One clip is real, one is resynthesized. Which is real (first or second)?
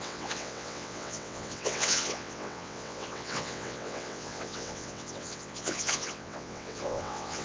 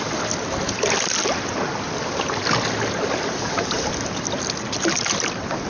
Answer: second